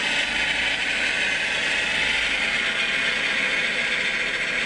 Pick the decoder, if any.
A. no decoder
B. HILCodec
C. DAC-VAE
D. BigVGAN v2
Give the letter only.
A